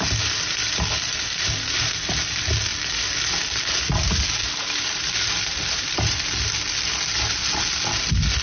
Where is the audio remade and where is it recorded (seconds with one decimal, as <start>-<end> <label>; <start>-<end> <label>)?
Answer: 0.0-8.4 recorded